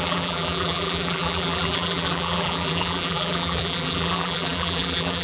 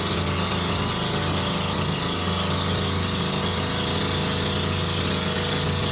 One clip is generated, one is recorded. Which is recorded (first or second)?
second